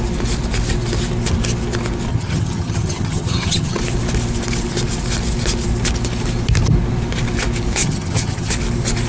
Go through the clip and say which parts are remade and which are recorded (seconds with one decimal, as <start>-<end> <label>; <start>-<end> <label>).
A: 0.0-2.1 recorded; 2.1-3.8 remade; 3.8-7.8 recorded; 7.8-8.5 remade; 8.5-9.1 recorded